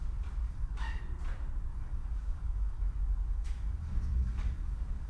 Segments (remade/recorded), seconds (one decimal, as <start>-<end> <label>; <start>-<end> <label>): 0.0-0.4 recorded; 0.4-1.0 remade; 1.0-1.7 recorded; 1.7-5.1 remade